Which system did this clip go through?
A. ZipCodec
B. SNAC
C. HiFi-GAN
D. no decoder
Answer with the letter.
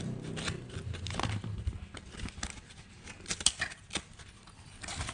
D